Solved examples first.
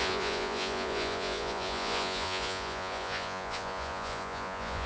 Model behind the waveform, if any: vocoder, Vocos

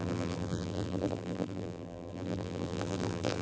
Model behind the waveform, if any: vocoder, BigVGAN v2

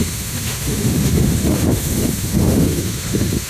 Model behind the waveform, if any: autoencoder, DAC-VAE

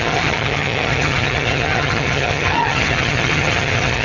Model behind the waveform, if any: vocoder, HiFi-GAN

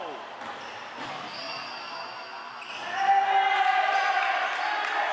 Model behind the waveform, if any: none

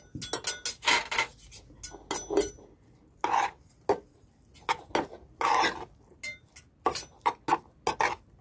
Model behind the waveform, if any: none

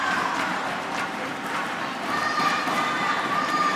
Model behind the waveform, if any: vocoder, BigVGAN v2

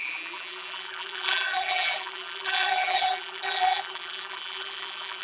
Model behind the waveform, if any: vocoder, BigVGAN v2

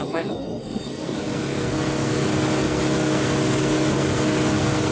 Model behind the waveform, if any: codec, SNAC